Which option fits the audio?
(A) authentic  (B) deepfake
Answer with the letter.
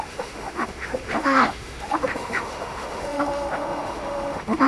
B